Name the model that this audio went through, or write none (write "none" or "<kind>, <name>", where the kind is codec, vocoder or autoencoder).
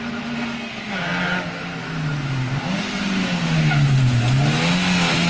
none